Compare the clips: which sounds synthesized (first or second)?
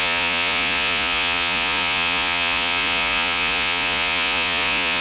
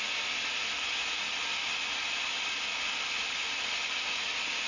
first